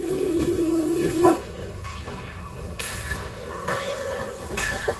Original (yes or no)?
no